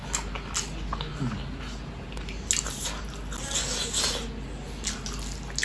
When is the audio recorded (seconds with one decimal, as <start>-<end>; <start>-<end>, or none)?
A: 0.0-5.6